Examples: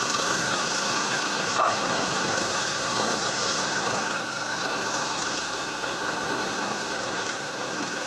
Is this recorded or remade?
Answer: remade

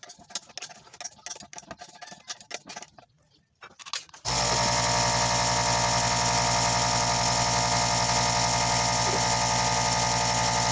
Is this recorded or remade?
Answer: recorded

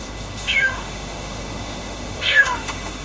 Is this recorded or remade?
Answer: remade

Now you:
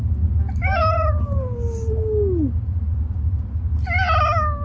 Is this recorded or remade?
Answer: recorded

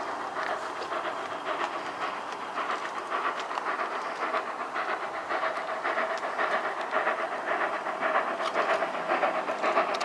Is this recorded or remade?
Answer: recorded